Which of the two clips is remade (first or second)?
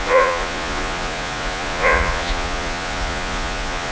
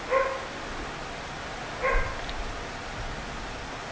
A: first